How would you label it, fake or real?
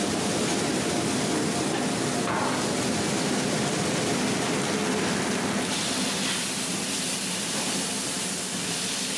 real